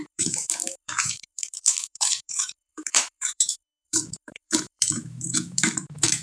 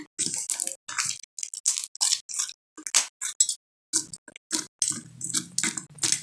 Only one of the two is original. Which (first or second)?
second